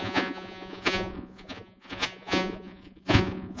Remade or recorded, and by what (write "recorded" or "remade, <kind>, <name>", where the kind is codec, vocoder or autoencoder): remade, vocoder, Vocos